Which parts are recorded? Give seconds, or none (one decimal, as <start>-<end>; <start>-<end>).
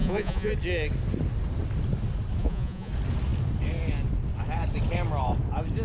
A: 0.5-2.4; 2.9-5.8